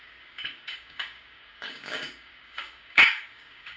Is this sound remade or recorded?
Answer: remade